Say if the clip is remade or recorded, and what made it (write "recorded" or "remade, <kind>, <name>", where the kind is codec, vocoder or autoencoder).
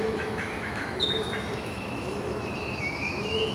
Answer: remade, autoencoder, DAC-VAE